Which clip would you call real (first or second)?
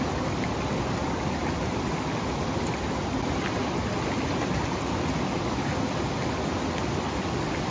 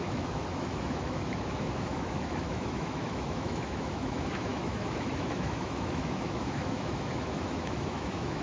first